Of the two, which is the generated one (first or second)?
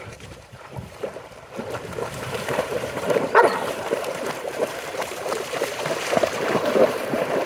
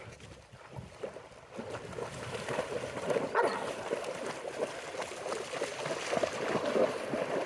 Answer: first